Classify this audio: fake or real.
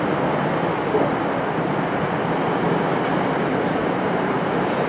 real